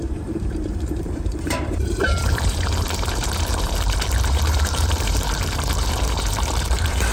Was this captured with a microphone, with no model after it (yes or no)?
no